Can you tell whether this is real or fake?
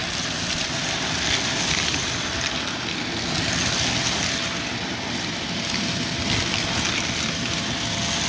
real